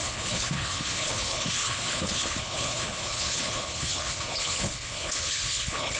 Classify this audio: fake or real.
fake